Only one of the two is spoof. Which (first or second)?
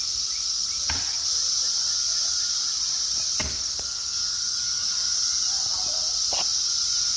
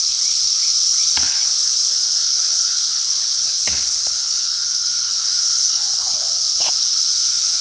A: second